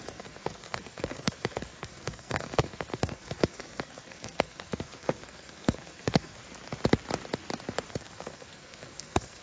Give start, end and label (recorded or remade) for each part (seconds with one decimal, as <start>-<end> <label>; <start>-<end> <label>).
0.0-6.4 remade; 6.4-7.9 recorded; 7.9-9.4 remade